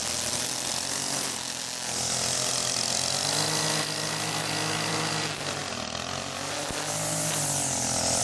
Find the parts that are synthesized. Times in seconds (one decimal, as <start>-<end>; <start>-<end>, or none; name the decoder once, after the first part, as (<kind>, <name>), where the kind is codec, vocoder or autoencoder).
none